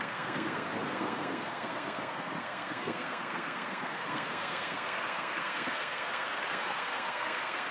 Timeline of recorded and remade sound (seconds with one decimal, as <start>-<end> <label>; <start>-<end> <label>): 0.0-7.7 remade